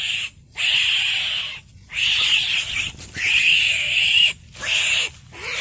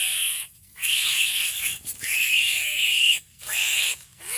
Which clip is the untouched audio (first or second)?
first